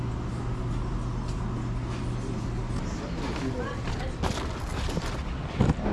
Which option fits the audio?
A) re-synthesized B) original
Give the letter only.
B